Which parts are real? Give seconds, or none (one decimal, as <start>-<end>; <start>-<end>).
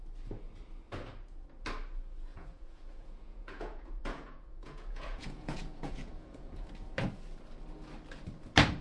0.0-2.3; 6.7-8.8